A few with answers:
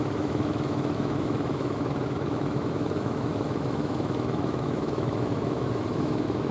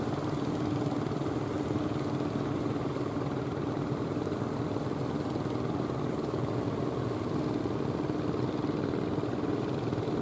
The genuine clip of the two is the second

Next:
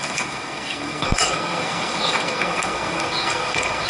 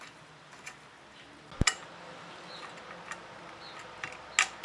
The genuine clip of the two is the second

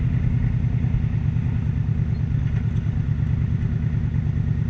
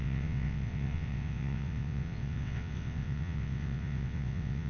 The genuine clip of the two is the first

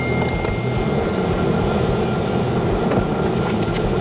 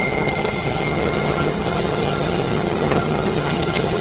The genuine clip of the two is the first